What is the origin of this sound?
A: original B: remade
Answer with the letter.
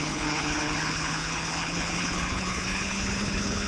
B